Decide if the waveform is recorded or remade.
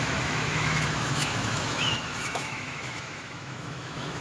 remade